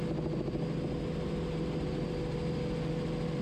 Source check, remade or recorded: recorded